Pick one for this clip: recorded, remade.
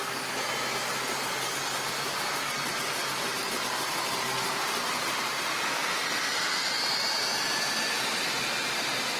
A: recorded